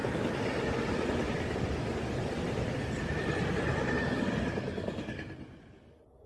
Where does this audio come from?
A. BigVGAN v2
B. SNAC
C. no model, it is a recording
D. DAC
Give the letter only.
C